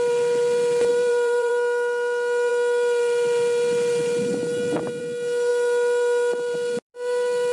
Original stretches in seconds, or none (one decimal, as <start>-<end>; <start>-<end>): 0.0-0.9; 1.5-7.5